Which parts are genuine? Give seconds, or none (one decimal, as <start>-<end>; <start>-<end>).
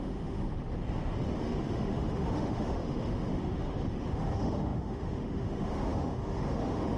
0.6-1.4